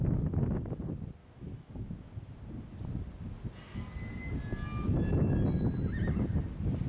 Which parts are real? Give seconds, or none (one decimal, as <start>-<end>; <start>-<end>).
0.0-1.2; 1.7-6.9